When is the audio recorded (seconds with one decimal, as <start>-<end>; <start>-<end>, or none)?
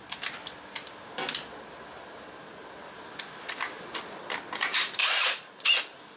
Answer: 0.0-5.0; 5.8-6.2